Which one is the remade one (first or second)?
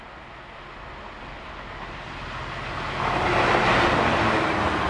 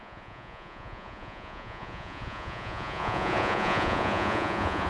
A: second